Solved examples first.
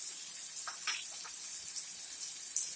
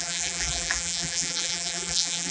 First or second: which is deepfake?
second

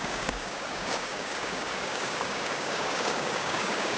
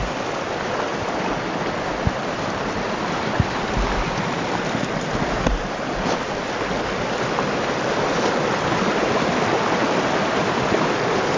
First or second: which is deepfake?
first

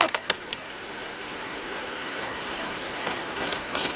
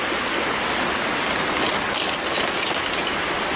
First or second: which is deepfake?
first